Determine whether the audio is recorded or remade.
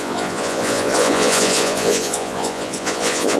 remade